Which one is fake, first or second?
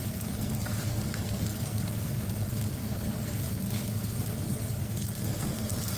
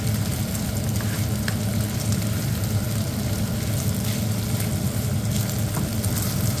first